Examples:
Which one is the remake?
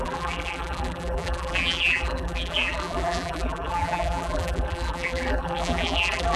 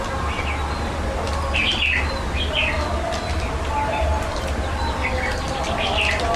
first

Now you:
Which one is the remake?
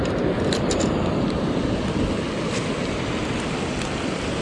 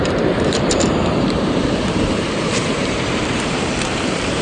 second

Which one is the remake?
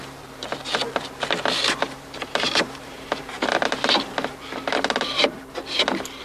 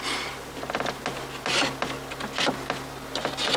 first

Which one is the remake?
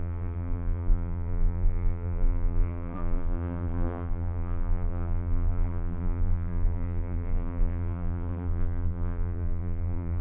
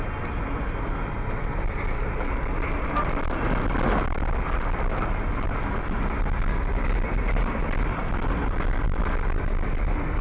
first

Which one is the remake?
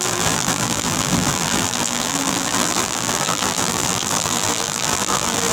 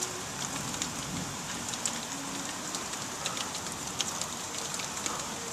first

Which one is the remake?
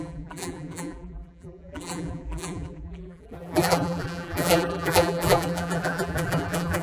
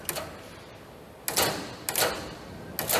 first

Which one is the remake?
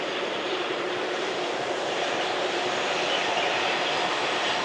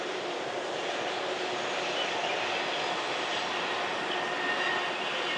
first